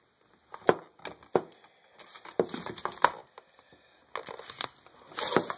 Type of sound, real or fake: real